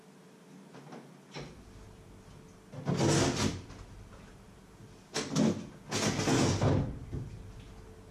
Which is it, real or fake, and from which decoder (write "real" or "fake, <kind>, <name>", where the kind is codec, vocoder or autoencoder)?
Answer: real